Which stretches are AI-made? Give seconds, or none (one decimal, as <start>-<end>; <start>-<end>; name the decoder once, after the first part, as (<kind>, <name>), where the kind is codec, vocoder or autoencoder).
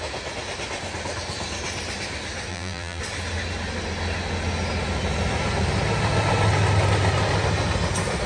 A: 2.5-3.0 (vocoder, BigVGAN v2)